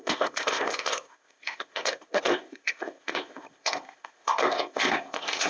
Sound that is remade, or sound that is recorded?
remade